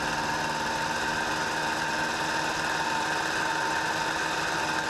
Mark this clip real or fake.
real